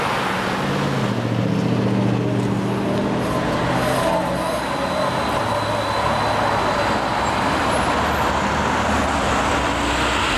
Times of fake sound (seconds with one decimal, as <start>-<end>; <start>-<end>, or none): none